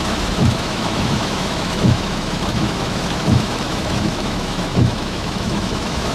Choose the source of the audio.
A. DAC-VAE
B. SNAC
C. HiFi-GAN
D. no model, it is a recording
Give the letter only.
A